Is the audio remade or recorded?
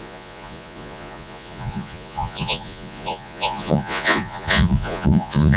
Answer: remade